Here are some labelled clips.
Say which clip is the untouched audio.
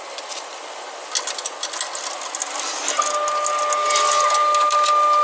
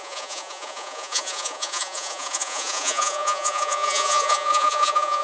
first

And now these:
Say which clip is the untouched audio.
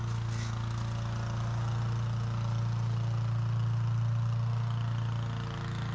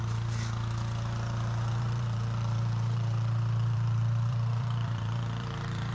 first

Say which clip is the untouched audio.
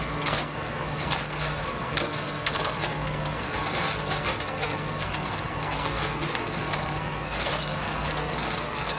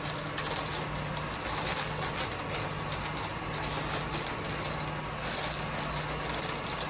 second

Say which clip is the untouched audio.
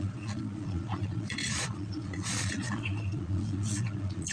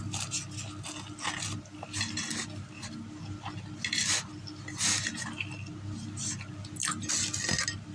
second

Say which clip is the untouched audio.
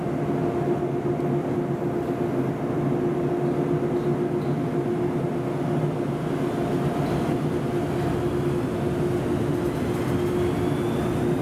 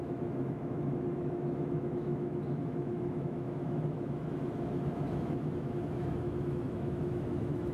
first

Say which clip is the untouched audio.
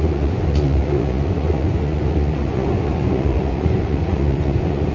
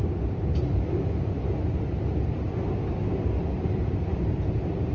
second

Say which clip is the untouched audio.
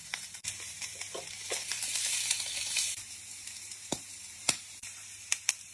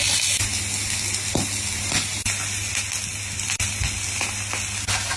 second